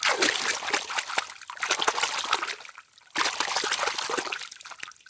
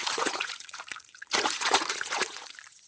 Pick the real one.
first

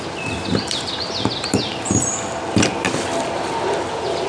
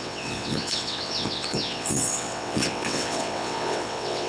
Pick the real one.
first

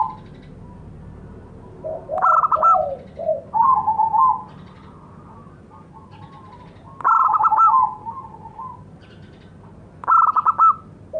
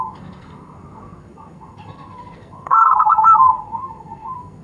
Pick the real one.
first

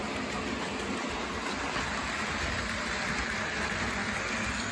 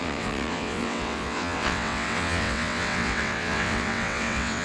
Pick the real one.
first